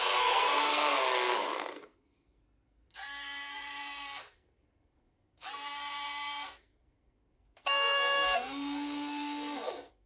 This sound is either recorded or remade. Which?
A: remade